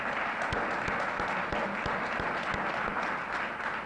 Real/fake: real